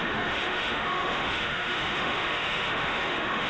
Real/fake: fake